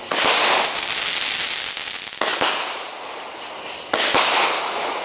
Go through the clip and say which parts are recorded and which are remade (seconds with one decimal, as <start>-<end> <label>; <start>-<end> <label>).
0.0-1.0 remade; 1.0-2.3 recorded; 2.3-3.2 remade; 3.2-5.0 recorded